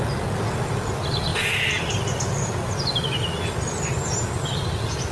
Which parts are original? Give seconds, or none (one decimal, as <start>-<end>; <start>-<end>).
0.0-5.1